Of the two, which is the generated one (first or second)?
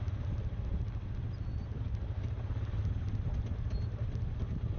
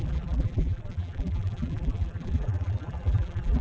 second